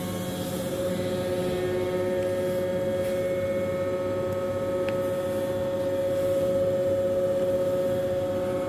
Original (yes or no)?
yes